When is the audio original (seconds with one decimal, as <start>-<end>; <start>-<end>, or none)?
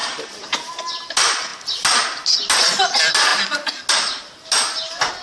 0.7-5.2